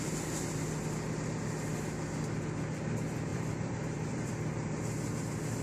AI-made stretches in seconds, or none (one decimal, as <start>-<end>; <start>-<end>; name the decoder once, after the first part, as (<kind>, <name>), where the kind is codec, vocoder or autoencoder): 3.3-4.3 (vocoder, BigVGAN v2)